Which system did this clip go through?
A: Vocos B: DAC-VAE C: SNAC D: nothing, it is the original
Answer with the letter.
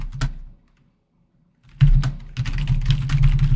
D